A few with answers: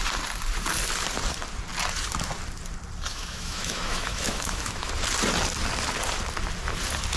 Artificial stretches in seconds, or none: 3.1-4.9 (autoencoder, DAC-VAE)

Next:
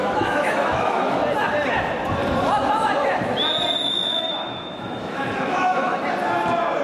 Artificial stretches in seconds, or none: 0.0-1.2 (autoencoder, DAC-VAE); 3.8-6.0

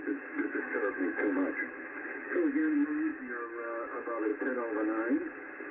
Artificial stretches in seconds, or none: 0.0-4.3 (autoencoder, DAC-VAE); 5.1-5.7

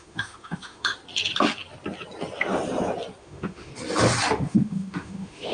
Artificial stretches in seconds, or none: 0.0-1.0 (autoencoder, DAC-VAE); 3.2-3.7; 4.3-5.5

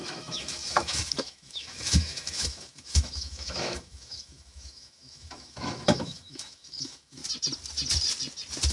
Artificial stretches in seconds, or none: 0.0-7.2 (autoencoder, DAC-VAE)